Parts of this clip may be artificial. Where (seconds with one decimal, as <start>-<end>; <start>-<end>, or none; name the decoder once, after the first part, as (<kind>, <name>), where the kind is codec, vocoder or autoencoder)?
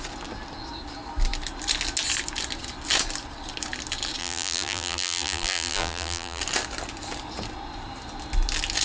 4.2-6.4 (vocoder, BigVGAN v2)